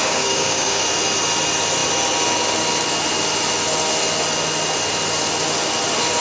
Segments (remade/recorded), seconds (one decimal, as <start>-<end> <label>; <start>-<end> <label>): 0.0-0.8 remade; 0.8-6.2 recorded